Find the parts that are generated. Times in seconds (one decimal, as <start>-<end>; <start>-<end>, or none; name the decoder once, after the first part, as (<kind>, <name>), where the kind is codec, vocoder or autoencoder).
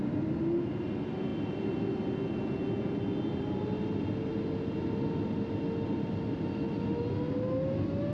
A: none